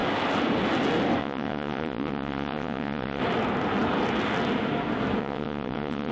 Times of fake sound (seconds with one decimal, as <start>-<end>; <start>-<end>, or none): 1.2-3.2; 5.2-6.1